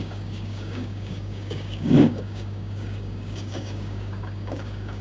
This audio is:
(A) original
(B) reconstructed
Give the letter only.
B